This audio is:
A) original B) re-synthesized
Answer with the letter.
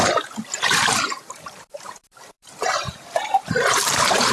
B